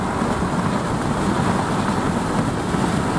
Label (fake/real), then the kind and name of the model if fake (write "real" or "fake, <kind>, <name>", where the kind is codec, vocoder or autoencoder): real